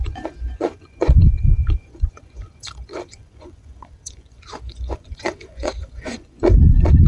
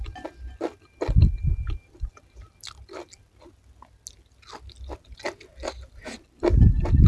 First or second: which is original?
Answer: second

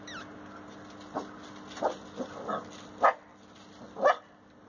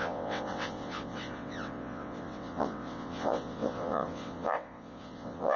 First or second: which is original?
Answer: first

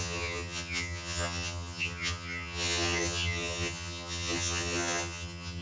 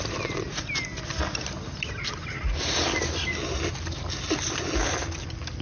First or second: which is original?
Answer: second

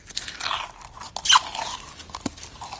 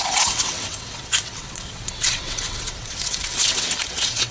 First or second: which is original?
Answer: first